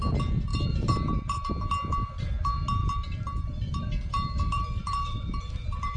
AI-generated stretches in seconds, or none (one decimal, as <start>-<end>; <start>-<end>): 0.5-1.5; 2.8-6.0